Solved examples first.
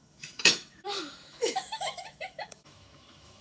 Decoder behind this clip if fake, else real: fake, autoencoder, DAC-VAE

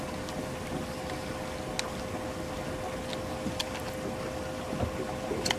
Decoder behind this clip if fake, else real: real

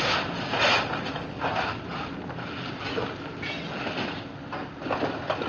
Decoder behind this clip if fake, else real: real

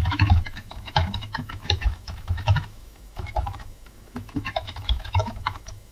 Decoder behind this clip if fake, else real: fake, autoencoder, DAC-VAE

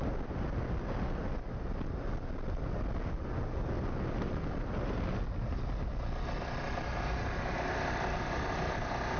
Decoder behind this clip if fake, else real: real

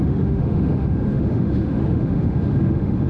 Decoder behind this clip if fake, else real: fake, autoencoder, DAC-VAE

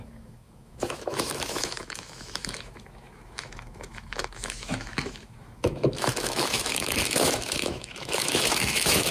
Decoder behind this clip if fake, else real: fake, autoencoder, DAC-VAE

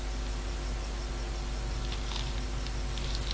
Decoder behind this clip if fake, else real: real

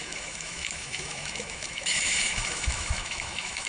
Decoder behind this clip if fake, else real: fake, autoencoder, DAC-VAE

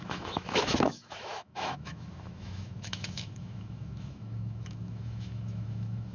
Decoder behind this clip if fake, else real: fake, autoencoder, DAC-VAE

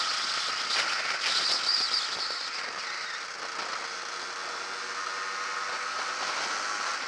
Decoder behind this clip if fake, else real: real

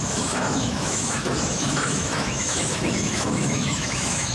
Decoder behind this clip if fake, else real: fake, autoencoder, DAC-VAE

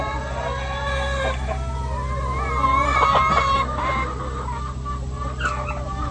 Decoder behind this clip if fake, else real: real